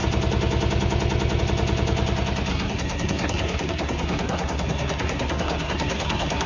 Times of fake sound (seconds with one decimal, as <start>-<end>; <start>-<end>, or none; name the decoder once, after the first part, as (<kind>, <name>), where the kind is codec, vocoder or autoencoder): 2.5-6.5 (codec, SNAC)